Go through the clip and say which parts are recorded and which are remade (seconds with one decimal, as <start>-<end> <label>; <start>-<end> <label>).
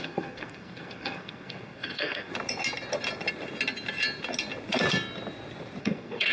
0.0-2.3 remade; 2.3-5.8 recorded; 5.8-6.3 remade